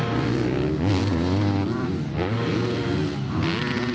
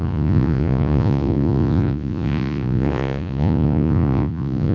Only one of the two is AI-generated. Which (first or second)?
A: second